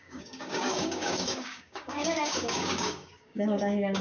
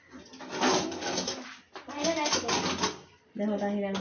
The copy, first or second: first